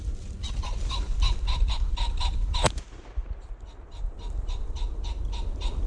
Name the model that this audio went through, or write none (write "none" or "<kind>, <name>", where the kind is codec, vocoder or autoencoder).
none